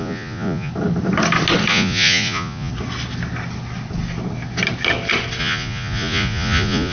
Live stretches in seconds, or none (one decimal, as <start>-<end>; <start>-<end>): 0.7-1.7; 2.7-5.4